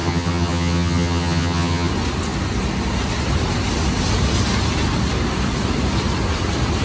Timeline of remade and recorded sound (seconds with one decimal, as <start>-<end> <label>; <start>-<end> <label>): 0.0-1.9 remade; 1.9-6.8 recorded